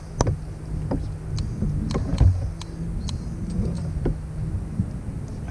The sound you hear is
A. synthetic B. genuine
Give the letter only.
B